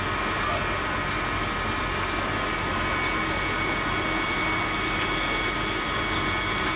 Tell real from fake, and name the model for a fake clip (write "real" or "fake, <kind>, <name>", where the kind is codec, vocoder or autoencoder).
real